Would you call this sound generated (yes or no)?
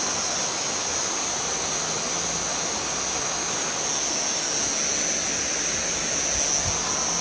no